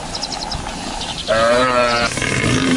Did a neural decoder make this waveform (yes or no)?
no